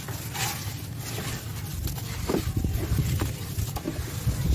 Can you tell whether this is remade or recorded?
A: recorded